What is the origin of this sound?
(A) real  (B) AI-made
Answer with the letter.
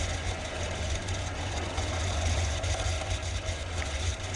B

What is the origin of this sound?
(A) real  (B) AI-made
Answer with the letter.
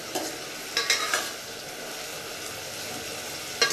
A